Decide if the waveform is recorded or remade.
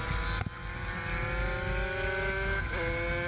recorded